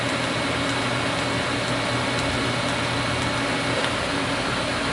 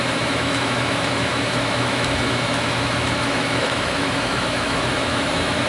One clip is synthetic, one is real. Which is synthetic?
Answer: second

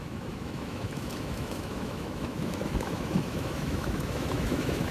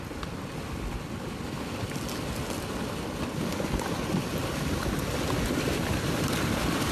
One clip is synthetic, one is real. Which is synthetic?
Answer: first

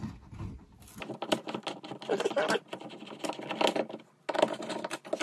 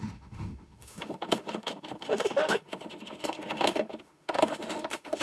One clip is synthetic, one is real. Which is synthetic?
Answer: second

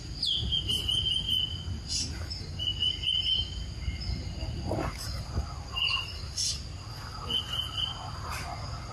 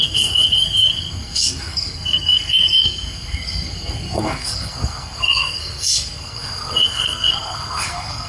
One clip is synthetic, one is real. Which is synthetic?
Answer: second